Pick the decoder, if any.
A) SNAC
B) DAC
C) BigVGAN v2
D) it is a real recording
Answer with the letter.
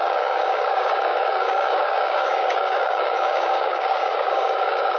B